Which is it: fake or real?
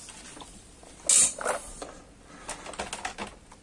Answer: real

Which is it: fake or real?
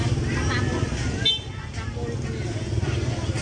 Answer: real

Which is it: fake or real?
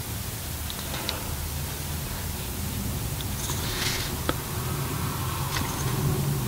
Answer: real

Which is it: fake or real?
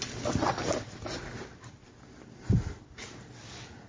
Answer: real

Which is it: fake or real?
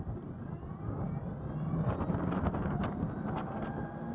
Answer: real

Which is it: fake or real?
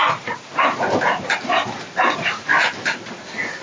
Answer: real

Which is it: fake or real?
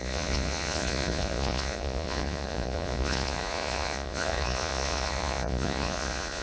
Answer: fake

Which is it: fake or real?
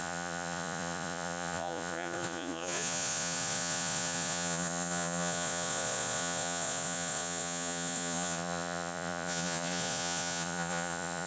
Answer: fake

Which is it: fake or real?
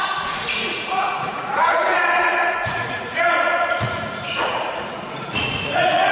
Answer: fake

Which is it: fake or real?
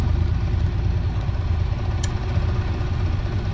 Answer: real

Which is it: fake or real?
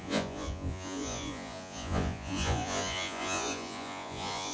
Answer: fake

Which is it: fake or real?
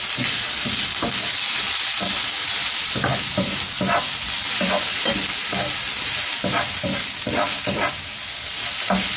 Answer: real